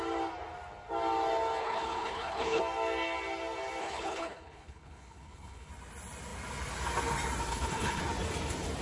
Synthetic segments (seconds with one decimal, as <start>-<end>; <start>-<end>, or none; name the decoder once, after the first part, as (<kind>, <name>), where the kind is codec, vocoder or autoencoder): 1.6-2.6 (codec, HILCodec); 3.8-5.7; 7.5-8.0